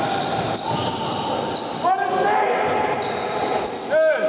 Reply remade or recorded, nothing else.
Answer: recorded